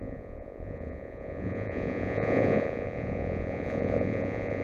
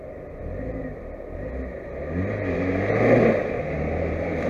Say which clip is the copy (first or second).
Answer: first